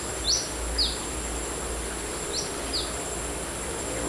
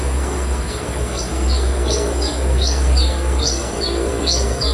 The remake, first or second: second